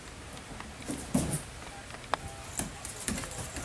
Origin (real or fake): real